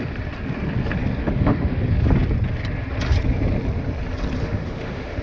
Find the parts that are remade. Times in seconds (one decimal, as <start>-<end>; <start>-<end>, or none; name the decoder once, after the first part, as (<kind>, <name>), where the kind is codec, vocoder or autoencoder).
1.2-1.8 (autoencoder, DAC-VAE); 4.4-5.2

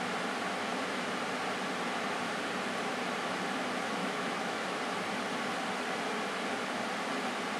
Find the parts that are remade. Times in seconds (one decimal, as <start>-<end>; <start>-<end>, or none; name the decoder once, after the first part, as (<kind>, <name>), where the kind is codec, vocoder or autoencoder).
4.0-4.8 (autoencoder, DAC-VAE)

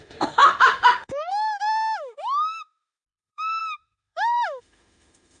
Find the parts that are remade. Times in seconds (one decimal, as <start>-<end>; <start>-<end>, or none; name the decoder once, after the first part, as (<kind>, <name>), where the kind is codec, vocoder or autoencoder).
0.0-5.4 (autoencoder, DAC-VAE)

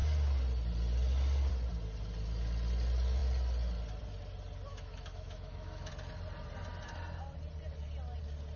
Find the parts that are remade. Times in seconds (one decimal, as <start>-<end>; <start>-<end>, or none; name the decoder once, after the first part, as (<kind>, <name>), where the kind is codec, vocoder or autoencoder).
4.7-5.9 (autoencoder, DAC-VAE)

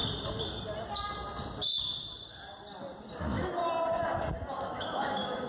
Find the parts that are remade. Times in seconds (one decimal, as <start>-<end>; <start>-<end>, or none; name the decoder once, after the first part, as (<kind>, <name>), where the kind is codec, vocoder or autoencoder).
3.2-3.6 (autoencoder, DAC-VAE); 4.5-5.5

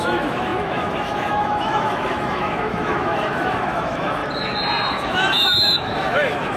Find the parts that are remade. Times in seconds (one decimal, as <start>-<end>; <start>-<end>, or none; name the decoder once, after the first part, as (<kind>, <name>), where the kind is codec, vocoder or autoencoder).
0.0-4.2 (autoencoder, DAC-VAE); 4.9-6.6